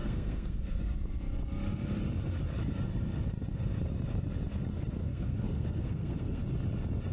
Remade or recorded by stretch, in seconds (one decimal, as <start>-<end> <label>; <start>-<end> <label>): 0.0-0.8 remade; 0.8-5.0 recorded; 5.0-6.4 remade; 6.4-7.1 recorded